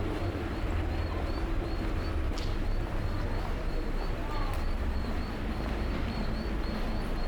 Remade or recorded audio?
remade